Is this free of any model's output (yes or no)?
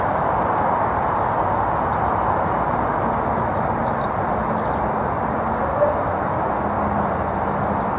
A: yes